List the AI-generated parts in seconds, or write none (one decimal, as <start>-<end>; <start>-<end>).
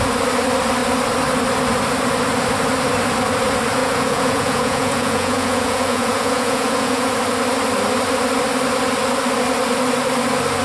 3.8-7.1